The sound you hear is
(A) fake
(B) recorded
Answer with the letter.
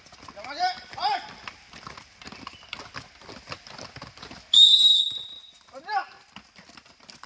B